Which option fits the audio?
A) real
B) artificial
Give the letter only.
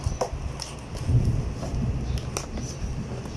A